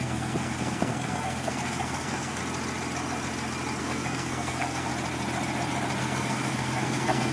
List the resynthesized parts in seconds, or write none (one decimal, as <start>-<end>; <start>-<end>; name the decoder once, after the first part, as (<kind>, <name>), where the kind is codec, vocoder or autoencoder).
0.0-2.4 (codec, SNAC); 3.8-4.9; 6.0-7.3